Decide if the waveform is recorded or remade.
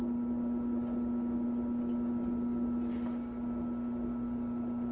recorded